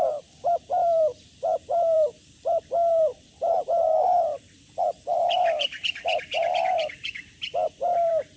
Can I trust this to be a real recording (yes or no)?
no